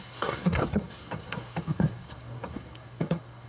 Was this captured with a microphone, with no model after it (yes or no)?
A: no